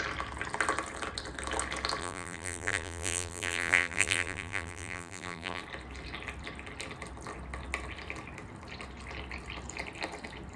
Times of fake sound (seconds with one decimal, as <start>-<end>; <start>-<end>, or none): 2.0-5.6